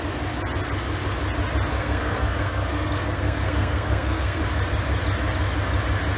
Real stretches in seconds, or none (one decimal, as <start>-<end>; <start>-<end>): 0.0-1.7; 4.4-6.2